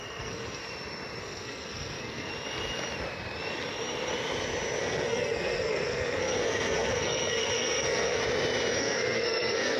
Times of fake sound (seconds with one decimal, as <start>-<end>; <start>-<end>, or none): 0.0-0.6; 1.2-2.3; 4.8-8.2; 8.8-9.8